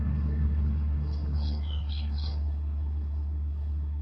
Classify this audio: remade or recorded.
remade